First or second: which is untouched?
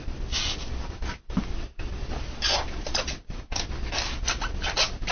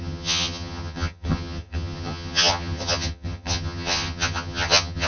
first